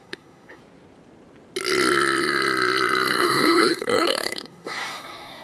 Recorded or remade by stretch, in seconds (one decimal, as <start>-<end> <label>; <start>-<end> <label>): 0.0-0.6 remade; 0.6-3.1 recorded; 3.1-5.4 remade